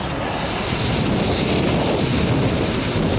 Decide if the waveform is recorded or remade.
recorded